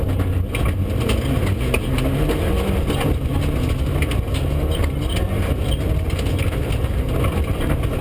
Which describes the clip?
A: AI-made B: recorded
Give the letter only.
B